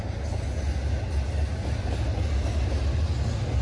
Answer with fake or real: real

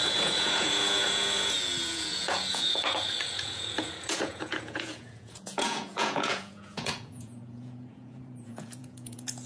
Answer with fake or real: fake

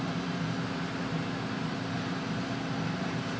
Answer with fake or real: real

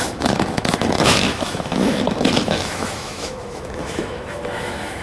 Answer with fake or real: fake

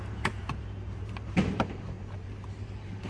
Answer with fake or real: fake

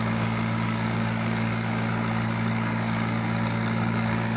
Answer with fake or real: fake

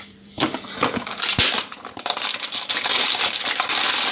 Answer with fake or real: fake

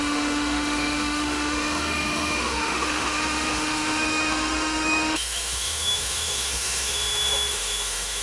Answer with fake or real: fake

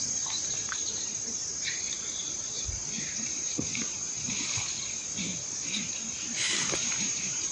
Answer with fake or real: real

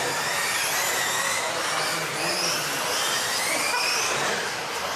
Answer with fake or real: real